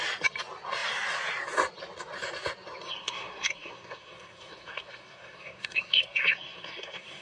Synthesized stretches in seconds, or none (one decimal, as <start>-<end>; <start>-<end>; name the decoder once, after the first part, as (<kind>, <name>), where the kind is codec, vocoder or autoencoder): 2.9-7.2 (codec, SNAC)